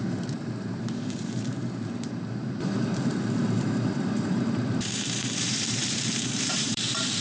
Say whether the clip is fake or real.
fake